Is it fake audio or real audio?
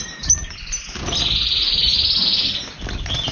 real